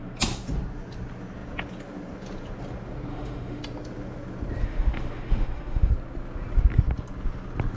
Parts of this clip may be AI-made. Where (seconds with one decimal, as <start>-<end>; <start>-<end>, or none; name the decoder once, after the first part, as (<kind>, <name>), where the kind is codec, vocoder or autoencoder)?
3.1-3.6 (autoencoder, DAC-VAE); 4.6-5.9